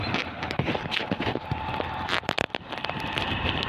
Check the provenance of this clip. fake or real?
real